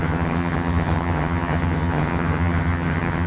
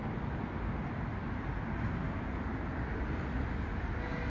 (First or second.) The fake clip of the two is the first